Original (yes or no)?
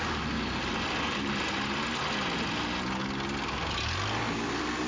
yes